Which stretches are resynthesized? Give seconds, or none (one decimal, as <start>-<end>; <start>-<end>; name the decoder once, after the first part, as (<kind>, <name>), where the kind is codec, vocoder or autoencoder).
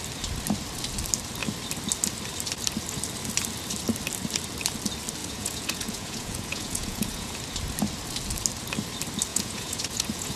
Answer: 5.2-7.4 (vocoder, Vocos); 9.3-10.4